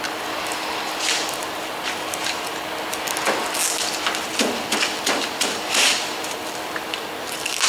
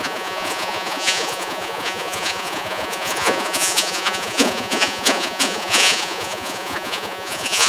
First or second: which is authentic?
first